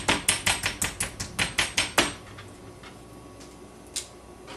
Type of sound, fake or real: real